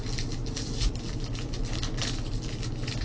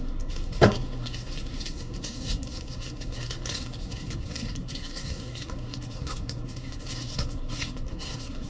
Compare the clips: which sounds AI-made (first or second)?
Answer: second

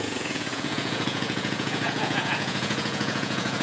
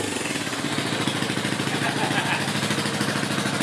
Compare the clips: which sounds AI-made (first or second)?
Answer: first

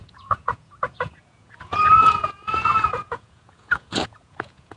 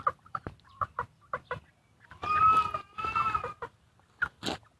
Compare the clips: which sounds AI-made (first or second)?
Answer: first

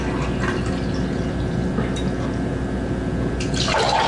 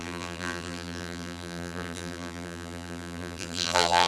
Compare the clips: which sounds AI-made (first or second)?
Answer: second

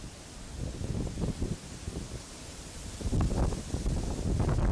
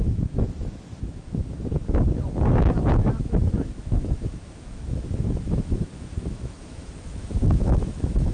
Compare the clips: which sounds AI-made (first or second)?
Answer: second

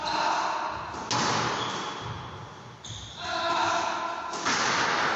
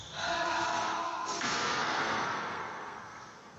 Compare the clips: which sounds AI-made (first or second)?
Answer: second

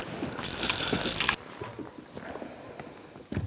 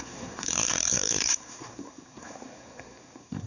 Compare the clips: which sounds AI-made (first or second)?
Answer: second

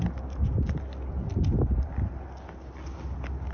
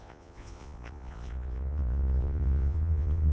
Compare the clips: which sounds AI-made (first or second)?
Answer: second